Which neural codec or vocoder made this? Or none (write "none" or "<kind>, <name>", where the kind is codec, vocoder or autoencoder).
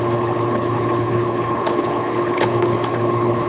codec, HILCodec